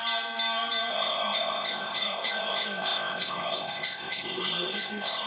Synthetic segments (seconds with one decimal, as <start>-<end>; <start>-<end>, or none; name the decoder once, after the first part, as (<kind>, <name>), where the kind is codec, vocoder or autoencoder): 0.9-5.3 (codec, ZipCodec)